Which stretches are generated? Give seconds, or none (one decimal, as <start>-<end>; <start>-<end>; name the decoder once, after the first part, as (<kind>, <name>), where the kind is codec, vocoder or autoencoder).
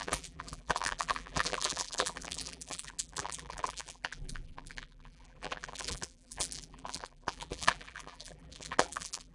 0.0-9.3 (vocoder, BigVGAN v2)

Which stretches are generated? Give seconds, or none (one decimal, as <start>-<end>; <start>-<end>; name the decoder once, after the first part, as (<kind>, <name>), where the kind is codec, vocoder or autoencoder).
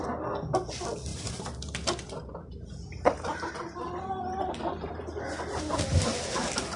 1.1-4.9 (vocoder, BigVGAN v2)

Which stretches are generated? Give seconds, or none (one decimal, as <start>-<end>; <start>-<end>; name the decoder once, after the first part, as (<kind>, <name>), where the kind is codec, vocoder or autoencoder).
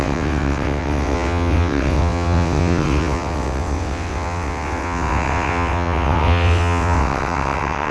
0.0-7.9 (vocoder, WaveNeXt)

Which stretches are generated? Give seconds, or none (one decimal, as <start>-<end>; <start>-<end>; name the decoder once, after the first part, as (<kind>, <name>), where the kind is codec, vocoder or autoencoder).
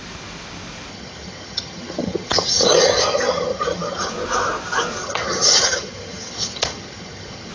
0.9-4.1 (vocoder, HiFi-GAN); 5.0-7.5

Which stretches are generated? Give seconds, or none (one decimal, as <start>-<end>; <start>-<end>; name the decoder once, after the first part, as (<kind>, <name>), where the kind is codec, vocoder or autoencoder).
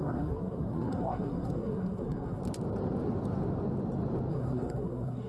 0.0-2.4 (codec, SNAC); 4.3-5.3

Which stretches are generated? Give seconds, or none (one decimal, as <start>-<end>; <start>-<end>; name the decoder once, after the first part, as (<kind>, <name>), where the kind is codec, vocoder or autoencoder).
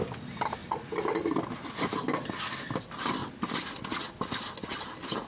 none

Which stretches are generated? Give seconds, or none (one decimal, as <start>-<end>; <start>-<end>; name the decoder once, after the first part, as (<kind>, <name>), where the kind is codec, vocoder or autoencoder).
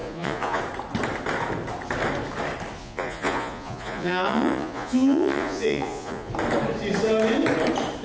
0.0-0.6 (vocoder, Vocos); 2.8-6.3